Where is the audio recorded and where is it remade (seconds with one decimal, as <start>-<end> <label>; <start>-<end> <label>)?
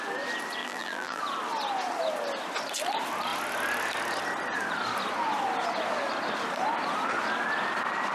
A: 0.0-0.6 recorded; 0.6-1.2 remade; 1.2-8.1 recorded